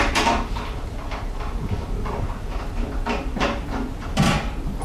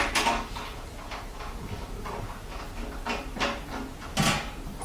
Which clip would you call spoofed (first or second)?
first